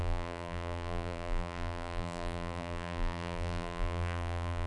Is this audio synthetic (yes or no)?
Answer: yes